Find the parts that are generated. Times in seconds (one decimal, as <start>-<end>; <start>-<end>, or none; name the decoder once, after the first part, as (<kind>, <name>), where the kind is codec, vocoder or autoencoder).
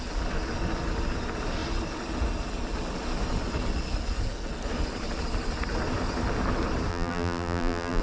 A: 6.9-8.0 (vocoder, BigVGAN v2)